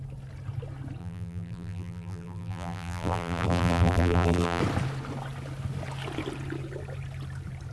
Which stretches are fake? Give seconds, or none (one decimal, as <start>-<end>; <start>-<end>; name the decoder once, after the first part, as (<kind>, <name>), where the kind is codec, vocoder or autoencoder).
1.0-4.6 (vocoder, BigVGAN v2)